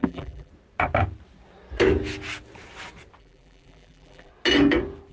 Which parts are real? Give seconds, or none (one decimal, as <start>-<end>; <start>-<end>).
0.5-3.2; 4.3-5.1